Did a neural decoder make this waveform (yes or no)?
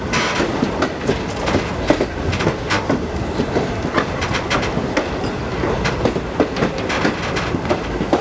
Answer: no